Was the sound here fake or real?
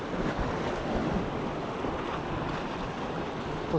real